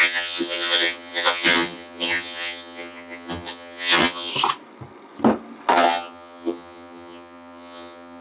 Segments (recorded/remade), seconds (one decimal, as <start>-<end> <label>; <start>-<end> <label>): 0.0-4.3 remade; 4.3-5.7 recorded; 5.7-8.2 remade